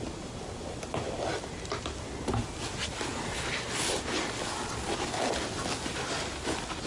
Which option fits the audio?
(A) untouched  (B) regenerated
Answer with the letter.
A